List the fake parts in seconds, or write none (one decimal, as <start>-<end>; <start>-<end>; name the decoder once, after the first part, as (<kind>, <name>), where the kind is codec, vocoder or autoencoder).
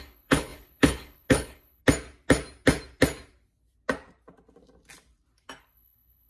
0.0-1.8 (codec, HILCodec); 5.6-6.3